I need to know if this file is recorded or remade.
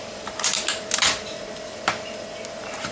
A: remade